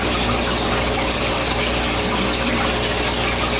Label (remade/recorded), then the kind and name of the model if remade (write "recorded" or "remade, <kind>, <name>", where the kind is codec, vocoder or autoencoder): recorded